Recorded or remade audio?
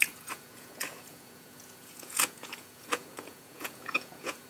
remade